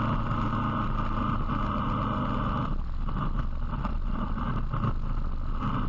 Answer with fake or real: real